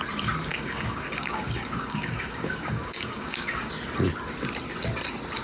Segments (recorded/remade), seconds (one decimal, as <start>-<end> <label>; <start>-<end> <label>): 0.0-0.5 recorded; 0.5-3.7 remade; 3.7-5.4 recorded